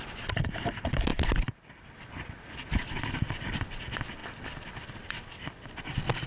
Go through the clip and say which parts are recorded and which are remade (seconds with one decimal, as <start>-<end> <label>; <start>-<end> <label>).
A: 0.0-6.3 recorded